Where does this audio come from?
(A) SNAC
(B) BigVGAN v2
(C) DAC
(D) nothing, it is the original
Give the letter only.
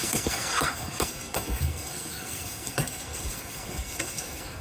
A